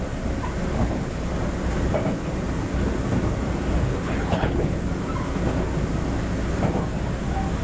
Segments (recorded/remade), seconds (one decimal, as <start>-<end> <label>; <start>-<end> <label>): 0.0-0.7 recorded; 0.7-1.3 remade; 1.3-3.9 recorded; 3.9-4.7 remade; 4.7-7.6 recorded